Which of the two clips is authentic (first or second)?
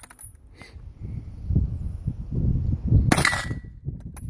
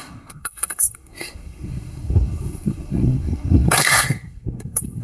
first